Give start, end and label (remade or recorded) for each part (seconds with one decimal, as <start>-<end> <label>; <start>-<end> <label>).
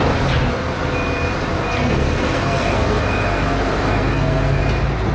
0.0-1.7 recorded; 1.7-4.6 remade; 4.6-5.1 recorded